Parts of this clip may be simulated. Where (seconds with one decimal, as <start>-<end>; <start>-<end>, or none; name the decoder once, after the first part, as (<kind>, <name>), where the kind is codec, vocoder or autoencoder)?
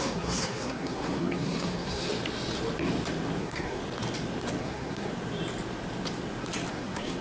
0.0-2.1 (codec, SNAC); 3.4-3.8; 4.6-5.1; 6.7-7.2